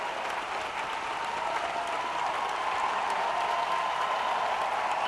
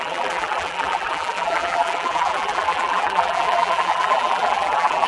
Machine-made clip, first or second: second